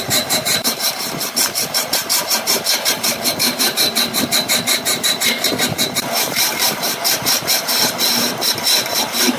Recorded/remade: remade